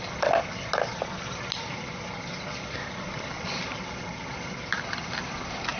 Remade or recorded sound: recorded